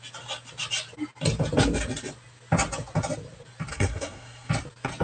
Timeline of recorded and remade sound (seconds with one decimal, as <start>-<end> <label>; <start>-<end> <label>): 0.0-3.7 recorded; 3.7-4.5 remade; 4.5-5.0 recorded